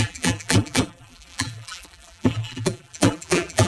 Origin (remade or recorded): remade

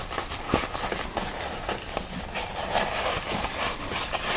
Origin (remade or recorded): remade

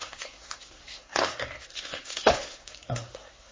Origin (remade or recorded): remade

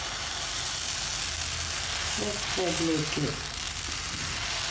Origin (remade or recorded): recorded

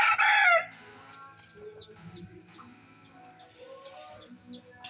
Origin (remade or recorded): recorded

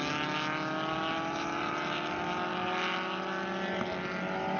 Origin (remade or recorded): recorded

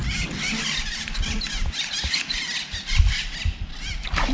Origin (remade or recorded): recorded